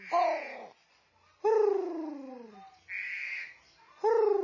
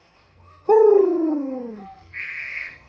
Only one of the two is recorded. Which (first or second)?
first